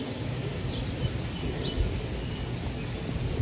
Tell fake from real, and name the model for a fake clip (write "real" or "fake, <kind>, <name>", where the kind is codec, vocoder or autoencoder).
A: real